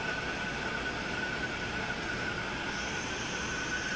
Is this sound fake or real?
real